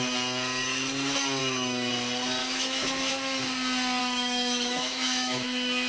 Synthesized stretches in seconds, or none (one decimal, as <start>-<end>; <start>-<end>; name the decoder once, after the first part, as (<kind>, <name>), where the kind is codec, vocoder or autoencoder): 1.4-1.9 (autoencoder, DAC-VAE); 2.4-3.1; 4.0-5.9